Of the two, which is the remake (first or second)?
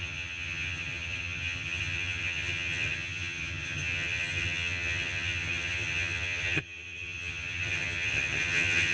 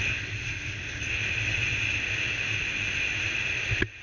first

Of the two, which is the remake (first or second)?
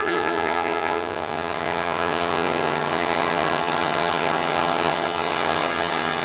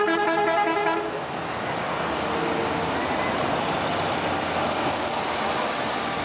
first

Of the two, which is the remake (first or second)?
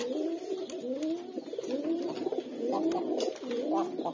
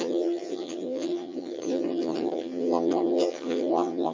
second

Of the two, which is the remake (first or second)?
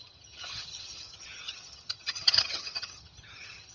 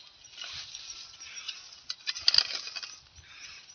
first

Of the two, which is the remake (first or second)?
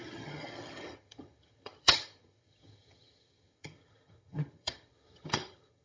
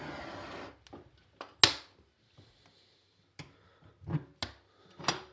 first